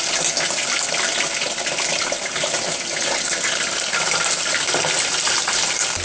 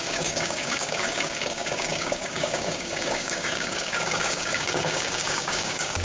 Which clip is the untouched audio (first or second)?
first